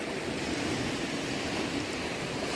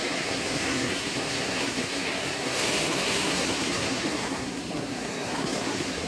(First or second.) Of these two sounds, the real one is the first